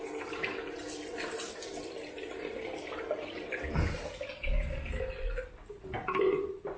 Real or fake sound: real